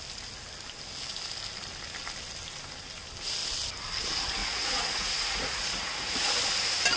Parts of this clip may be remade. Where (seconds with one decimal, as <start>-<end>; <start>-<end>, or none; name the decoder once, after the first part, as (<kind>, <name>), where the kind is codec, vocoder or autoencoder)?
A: 4.4-6.3 (vocoder, Vocos)